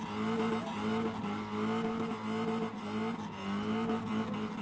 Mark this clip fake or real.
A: real